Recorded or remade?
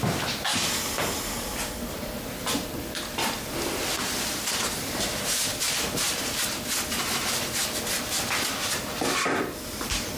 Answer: remade